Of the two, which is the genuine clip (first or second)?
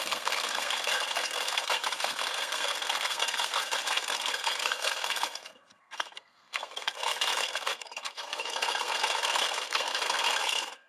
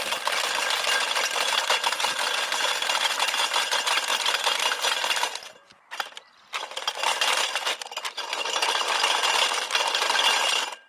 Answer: second